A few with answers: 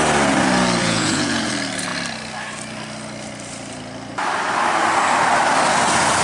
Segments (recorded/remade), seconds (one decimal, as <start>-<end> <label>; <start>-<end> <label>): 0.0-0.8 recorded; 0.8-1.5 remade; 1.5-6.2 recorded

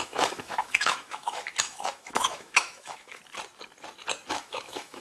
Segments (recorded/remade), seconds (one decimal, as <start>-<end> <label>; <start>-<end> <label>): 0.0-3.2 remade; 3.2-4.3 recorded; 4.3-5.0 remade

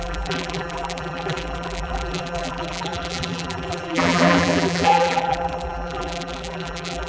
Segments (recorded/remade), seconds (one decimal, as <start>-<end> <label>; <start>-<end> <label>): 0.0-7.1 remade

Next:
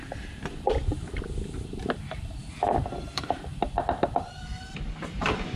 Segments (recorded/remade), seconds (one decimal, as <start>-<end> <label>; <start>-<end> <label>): 0.0-0.8 remade; 0.8-2.0 recorded; 2.0-2.4 remade; 2.4-2.9 recorded; 2.9-3.5 remade; 3.5-4.8 recorded; 4.8-5.6 remade